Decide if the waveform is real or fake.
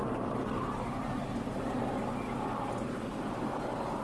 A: real